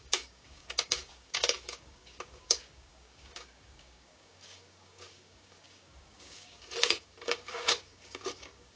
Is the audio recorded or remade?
remade